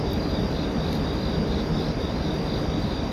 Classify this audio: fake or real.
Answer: real